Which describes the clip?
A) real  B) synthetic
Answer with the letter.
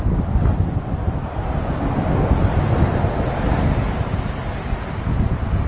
A